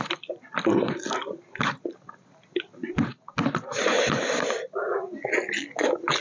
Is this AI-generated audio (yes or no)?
no